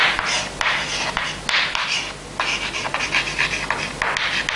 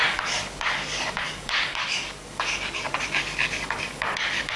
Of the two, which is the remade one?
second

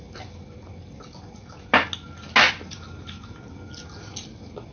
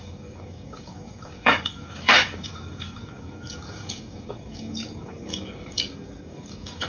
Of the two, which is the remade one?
second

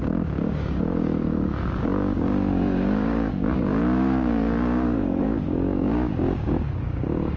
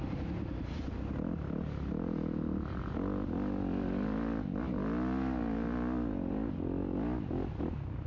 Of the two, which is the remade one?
first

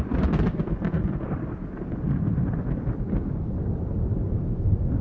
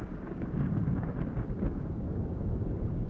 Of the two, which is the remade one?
second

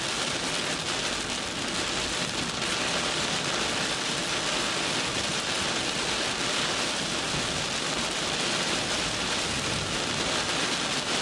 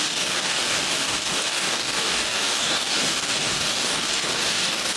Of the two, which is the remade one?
second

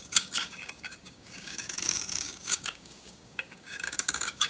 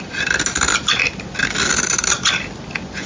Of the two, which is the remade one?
first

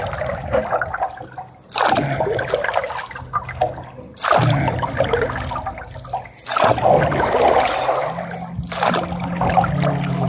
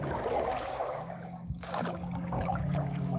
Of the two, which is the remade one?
second